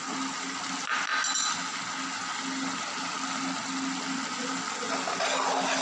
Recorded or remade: recorded